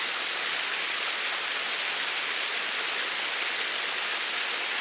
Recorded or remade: recorded